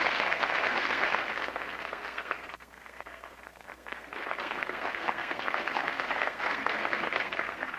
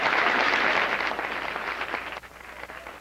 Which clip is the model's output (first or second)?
first